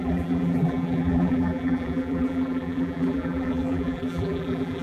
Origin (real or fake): fake